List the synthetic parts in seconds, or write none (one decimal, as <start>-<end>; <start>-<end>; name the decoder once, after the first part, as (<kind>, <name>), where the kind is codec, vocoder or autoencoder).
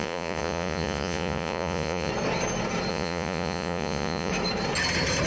0.0-2.1 (vocoder, Vocos); 2.9-4.3